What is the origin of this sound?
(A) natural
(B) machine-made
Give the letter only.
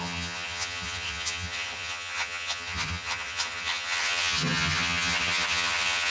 B